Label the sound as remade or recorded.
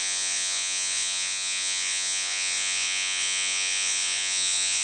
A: remade